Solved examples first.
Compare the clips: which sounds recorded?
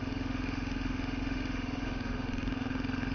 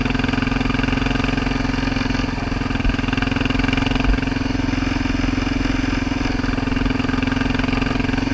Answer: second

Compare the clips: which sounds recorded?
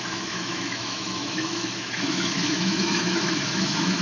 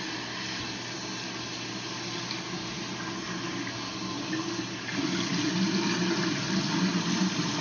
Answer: second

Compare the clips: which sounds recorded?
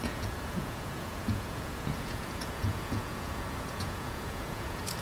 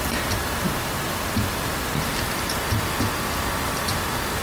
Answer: second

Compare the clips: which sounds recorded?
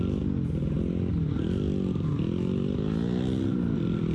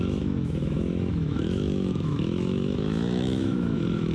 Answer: first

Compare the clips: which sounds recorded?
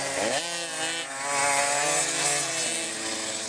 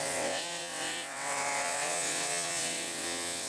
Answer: first